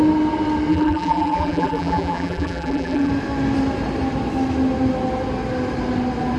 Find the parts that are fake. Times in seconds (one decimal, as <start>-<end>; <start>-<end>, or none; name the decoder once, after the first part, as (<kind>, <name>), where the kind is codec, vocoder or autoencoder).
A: 0.7-3.1 (vocoder, BigVGAN v2)